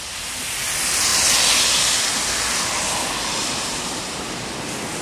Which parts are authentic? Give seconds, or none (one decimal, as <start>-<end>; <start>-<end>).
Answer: 0.0-3.4; 4.2-5.0